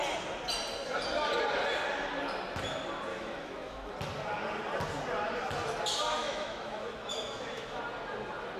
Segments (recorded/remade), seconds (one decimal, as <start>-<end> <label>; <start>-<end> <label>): 0.0-3.1 recorded; 3.1-3.9 remade; 3.9-6.2 recorded; 6.2-7.8 remade; 7.8-8.6 recorded